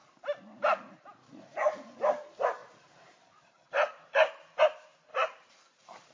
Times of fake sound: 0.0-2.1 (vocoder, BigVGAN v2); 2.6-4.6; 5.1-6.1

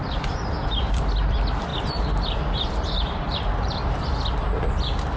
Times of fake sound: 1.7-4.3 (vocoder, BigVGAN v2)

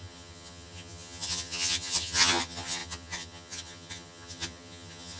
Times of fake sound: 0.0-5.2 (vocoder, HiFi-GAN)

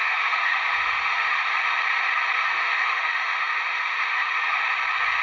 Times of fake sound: 0.0-1.5 (autoencoder, DAC-VAE); 2.6-4.6

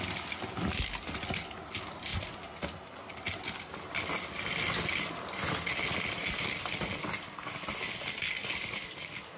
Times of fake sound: none